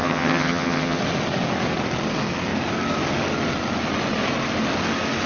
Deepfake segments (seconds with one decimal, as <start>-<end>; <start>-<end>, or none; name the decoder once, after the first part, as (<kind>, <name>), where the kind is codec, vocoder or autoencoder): 0.0-1.0 (vocoder, HiFi-GAN)